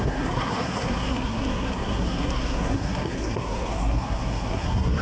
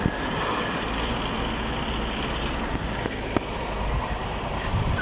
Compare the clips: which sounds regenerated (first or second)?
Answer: first